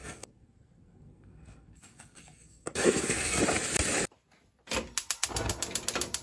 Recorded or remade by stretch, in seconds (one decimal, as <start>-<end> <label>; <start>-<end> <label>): 0.0-3.4 remade; 3.4-6.2 recorded

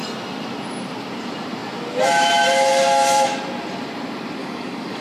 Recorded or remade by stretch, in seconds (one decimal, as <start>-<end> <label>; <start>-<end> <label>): 0.0-4.4 recorded; 4.4-5.0 remade

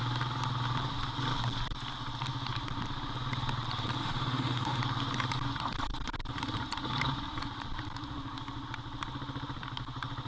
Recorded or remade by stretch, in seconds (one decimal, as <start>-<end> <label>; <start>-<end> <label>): 0.0-4.0 recorded; 4.0-4.8 remade; 4.8-10.3 recorded